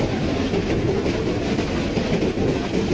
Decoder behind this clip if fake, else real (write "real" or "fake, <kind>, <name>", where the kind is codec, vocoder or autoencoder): real